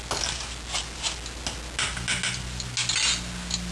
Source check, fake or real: real